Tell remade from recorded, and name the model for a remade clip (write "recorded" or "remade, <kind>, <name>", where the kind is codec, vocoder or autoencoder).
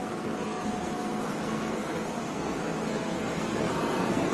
remade, codec, SNAC